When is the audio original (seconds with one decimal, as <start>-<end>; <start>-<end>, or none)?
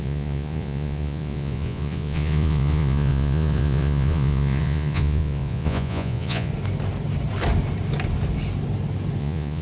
6.5-9.2